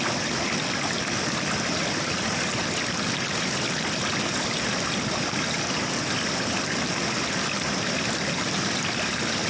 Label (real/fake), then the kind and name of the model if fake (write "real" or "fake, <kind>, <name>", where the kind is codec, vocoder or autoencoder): real